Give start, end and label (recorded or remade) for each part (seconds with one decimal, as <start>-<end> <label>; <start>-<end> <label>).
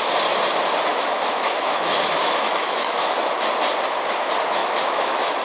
0.0-0.9 recorded; 0.9-3.4 remade; 3.4-4.6 recorded; 4.6-5.4 remade